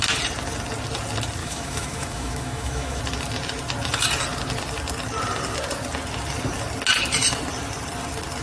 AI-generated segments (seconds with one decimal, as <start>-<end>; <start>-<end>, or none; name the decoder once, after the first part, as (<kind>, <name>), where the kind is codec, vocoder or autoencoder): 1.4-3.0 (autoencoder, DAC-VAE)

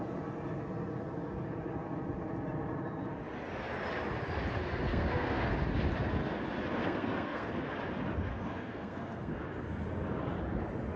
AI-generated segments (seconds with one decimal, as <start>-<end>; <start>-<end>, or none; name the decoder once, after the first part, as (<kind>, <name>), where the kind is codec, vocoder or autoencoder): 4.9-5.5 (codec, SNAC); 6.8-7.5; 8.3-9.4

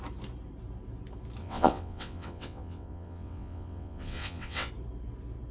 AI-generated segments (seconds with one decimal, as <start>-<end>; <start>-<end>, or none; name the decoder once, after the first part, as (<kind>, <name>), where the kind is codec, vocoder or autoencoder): 1.4-4.7 (vocoder, WaveNeXt)

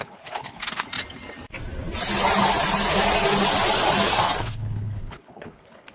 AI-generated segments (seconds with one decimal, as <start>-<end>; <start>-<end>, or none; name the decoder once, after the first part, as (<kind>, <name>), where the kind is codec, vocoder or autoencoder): 0.0-0.9 (codec, HILCodec); 4.4-5.9

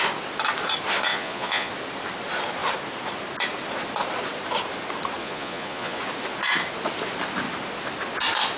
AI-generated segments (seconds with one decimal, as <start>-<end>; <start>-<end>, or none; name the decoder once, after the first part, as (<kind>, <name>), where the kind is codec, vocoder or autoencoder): 1.1-1.7 (vocoder, Vocos); 5.2-6.0

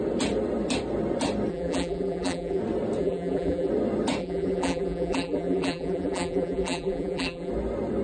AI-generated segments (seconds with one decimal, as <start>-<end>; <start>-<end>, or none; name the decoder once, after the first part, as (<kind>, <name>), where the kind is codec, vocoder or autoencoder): 1.5-2.6 (vocoder, BigVGAN v2); 3.0-3.7; 4.2-7.5